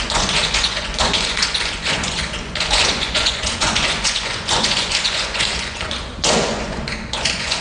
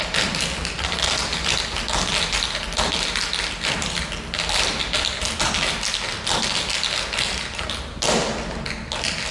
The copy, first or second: first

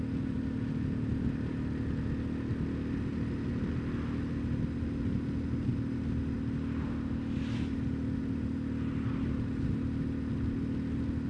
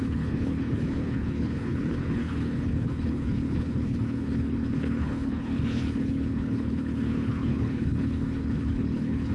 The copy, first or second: second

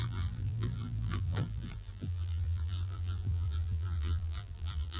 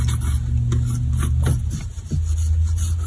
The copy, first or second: first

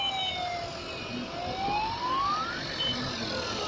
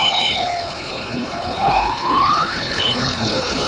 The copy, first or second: second